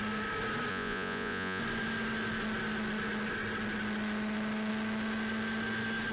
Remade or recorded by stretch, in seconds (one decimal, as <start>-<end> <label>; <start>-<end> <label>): 0.0-0.7 recorded; 0.7-1.6 remade; 1.6-6.1 recorded